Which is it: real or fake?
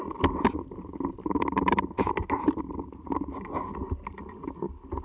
real